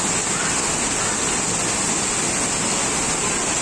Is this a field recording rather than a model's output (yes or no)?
yes